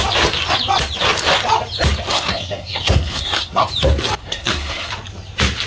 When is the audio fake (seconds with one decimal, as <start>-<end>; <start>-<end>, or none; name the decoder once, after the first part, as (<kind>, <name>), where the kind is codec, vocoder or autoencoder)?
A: 2.1-3.7 (codec, SNAC); 4.2-4.9